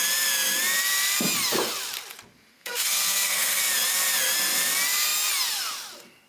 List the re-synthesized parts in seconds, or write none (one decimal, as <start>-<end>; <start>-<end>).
2.5-3.6